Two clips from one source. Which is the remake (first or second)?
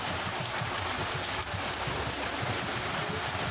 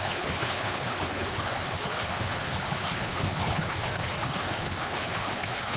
second